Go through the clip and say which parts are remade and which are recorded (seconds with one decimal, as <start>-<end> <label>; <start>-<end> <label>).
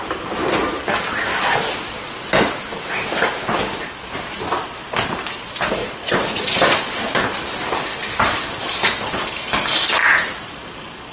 0.0-5.8 recorded; 5.8-6.8 remade; 6.8-11.1 recorded